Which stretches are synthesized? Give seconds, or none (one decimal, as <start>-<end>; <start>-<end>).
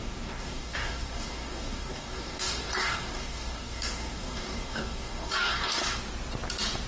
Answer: 0.0-5.8